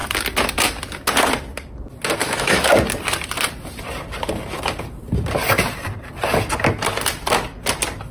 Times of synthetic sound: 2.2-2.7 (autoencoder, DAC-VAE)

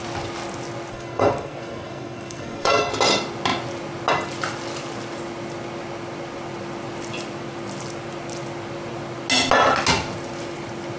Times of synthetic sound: 0.9-2.9 (codec, SNAC)

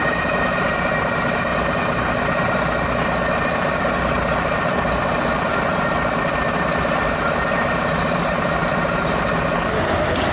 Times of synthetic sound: 0.0-1.5 (vocoder, BigVGAN v2); 3.3-10.3

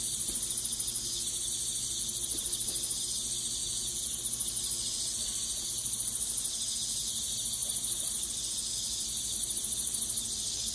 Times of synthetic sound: 3.6-4.2 (vocoder, Vocos)

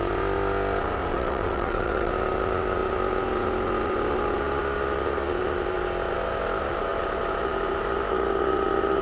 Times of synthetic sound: 1.0-2.1 (vocoder, WaveNeXt)

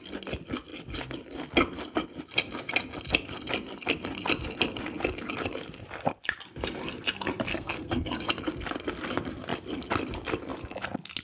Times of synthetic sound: 7.5-8.3 (codec, SNAC)

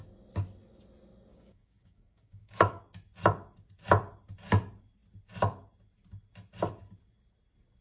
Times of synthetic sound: 1.3-2.8 (codec, DAC)